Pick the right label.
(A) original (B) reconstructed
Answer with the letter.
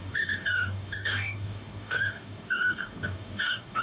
B